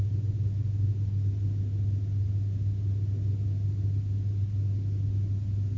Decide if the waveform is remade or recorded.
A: recorded